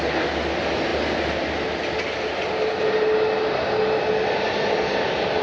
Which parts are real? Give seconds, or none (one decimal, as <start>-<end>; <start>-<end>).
0.0-5.4